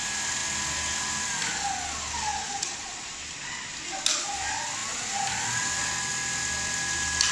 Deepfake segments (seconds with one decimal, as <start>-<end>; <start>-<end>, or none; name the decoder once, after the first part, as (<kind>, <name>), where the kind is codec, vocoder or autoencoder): none